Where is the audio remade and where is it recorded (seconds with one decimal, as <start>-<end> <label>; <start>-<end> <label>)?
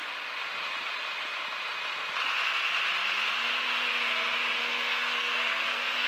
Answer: 0.0-4.6 recorded; 4.6-6.1 remade